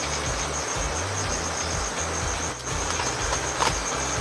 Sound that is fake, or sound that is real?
real